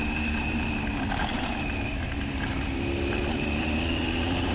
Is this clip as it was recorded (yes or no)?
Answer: yes